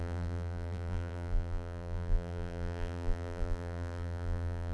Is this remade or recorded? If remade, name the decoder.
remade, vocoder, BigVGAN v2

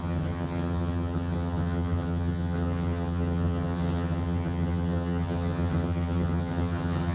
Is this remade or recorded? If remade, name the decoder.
remade, vocoder, HiFi-GAN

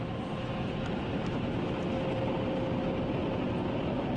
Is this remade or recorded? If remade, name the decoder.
recorded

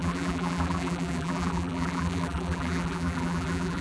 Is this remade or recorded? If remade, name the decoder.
remade, vocoder, BigVGAN v2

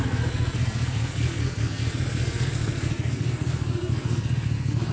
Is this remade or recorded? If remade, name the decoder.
remade, codec, SNAC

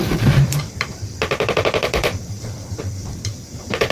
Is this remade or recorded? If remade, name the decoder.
remade, vocoder, BigVGAN v2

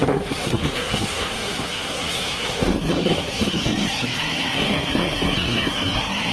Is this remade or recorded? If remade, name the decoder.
remade, codec, SNAC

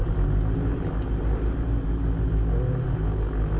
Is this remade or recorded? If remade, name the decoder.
recorded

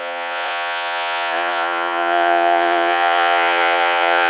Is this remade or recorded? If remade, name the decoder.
remade, vocoder, Vocos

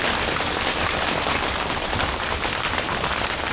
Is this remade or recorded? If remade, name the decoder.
remade, vocoder, BigVGAN v2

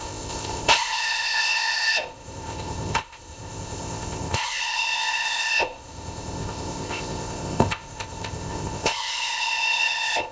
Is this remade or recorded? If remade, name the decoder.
remade, codec, ZipCodec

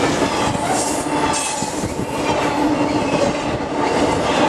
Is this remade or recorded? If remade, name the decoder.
recorded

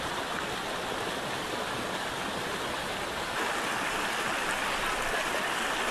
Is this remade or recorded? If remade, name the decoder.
recorded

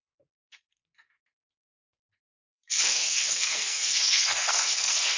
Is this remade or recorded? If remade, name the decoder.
remade, codec, SNAC